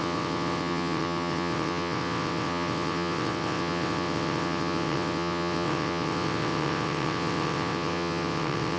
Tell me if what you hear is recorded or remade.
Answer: remade